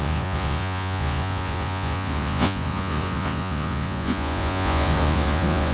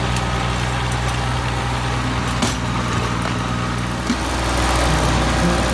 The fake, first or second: first